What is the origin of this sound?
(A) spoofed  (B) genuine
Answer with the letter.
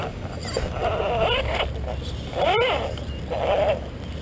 B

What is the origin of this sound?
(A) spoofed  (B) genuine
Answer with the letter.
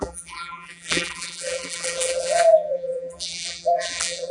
A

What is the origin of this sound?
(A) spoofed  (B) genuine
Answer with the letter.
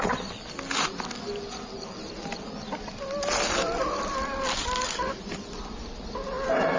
B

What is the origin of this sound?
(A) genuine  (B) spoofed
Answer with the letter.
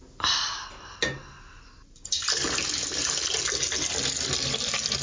A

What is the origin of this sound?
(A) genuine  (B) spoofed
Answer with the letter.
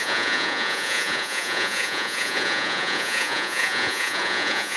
B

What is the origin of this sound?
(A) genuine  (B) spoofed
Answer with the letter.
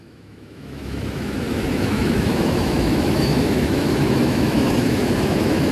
B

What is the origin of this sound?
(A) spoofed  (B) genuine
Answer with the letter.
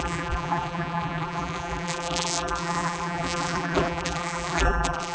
A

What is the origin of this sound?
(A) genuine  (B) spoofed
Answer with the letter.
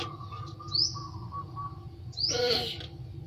A